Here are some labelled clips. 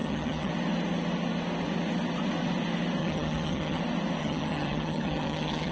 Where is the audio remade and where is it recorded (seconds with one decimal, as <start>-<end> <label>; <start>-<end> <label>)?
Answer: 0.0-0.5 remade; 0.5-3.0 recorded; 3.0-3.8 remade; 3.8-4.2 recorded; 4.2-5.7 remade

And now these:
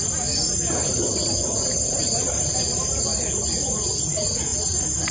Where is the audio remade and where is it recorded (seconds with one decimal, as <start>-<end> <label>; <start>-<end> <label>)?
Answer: 0.0-0.8 recorded; 0.8-3.0 remade; 3.0-5.1 recorded

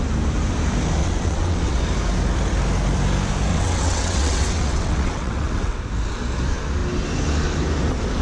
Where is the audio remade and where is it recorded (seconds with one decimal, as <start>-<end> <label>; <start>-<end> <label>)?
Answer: 0.0-1.0 recorded; 1.0-1.8 remade; 1.8-3.5 recorded; 3.5-5.8 remade; 5.8-8.2 recorded

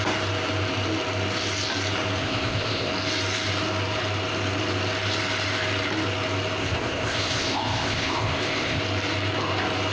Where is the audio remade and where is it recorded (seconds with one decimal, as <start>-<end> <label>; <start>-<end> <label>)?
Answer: 0.0-2.2 recorded; 2.2-2.9 remade; 2.9-6.6 recorded; 6.6-8.8 remade; 8.8-9.9 recorded